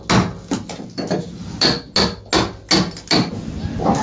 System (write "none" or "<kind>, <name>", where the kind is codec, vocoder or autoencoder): none